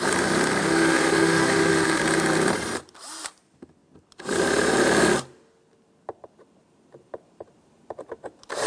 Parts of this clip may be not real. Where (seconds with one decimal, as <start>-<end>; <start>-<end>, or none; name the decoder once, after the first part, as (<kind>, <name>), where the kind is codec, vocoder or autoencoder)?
0.6-2.0 (autoencoder, DAC-VAE)